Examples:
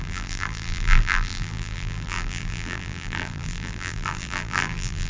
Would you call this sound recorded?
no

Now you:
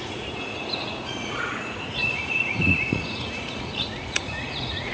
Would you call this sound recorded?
no